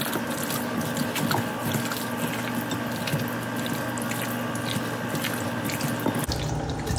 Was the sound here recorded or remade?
recorded